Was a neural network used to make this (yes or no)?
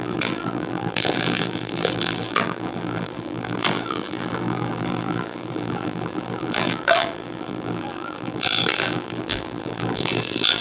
yes